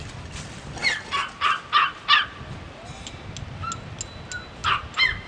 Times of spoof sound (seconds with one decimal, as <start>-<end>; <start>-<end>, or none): none